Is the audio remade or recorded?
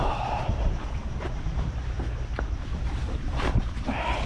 remade